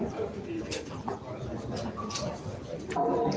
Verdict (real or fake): real